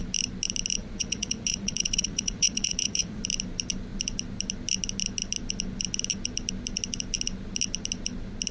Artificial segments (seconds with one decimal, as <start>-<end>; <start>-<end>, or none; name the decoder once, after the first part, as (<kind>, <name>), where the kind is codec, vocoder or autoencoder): 0.8-3.2 (vocoder, Vocos)